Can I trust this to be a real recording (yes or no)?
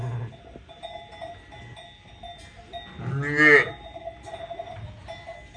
yes